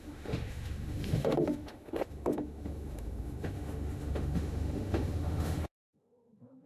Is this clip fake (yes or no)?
yes